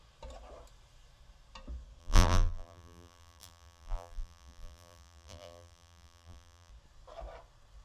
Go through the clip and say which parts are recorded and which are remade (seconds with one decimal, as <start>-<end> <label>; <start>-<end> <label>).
0.0-2.0 recorded; 2.0-6.7 remade; 6.7-7.8 recorded